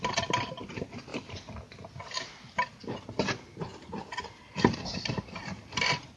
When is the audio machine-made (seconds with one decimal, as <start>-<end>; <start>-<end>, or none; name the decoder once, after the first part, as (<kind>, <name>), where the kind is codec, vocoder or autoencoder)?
none